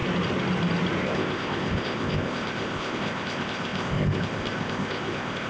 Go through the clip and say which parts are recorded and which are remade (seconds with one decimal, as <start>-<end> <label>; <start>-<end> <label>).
0.0-1.0 recorded; 1.0-5.5 remade